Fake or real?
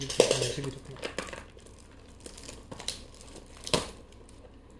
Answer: real